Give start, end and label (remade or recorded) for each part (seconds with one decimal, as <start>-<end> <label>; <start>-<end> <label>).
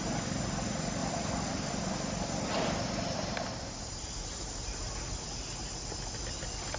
0.0-1.0 recorded; 1.0-1.7 remade; 1.7-6.8 recorded